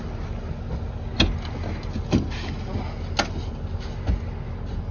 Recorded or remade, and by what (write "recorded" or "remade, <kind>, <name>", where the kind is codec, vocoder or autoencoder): recorded